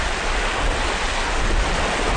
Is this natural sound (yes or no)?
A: yes